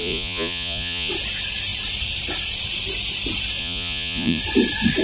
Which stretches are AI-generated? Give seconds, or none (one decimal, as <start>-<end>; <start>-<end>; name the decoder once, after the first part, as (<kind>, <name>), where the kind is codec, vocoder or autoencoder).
0.0-1.1 (vocoder, Vocos); 3.6-4.4